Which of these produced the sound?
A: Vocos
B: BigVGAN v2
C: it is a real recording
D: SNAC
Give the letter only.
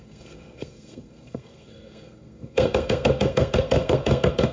D